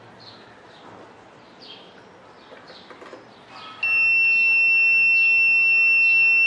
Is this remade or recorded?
recorded